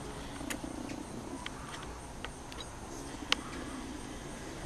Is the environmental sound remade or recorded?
recorded